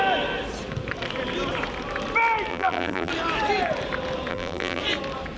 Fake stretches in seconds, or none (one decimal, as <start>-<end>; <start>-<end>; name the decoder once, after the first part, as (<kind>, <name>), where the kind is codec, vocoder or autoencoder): 2.5-3.1 (vocoder, BigVGAN v2); 4.3-4.8